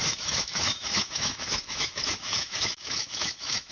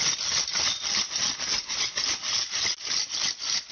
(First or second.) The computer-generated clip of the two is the first